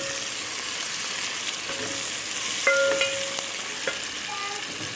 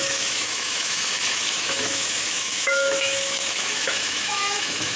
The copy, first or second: second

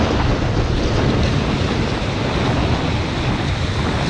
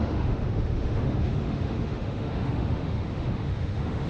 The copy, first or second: second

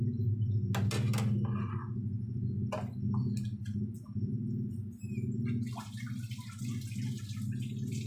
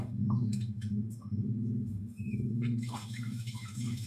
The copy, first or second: second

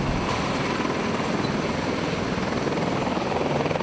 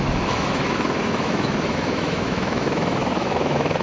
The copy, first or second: second